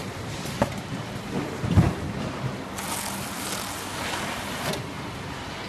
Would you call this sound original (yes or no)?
yes